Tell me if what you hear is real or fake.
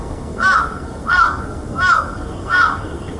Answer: fake